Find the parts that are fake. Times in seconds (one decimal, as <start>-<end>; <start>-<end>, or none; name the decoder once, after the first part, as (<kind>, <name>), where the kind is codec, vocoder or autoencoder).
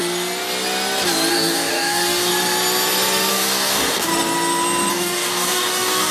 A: 1.3-2.3 (codec, DAC); 3.3-4.1; 4.9-6.1